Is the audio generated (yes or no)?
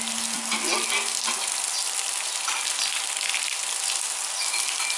no